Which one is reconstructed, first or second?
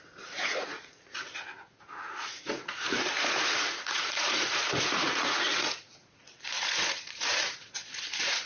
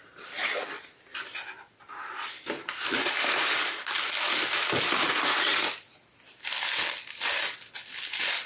first